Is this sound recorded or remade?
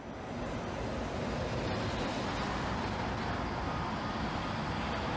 recorded